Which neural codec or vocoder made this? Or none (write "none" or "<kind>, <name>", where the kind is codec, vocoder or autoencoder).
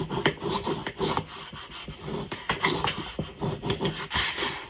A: none